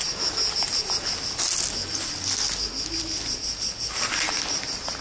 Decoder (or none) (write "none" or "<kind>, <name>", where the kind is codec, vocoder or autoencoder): none